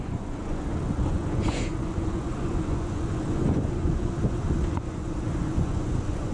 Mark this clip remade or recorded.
remade